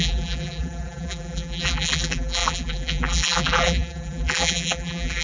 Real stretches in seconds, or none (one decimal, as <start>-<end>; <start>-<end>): none